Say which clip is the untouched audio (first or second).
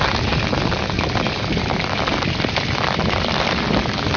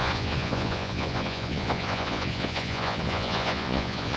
first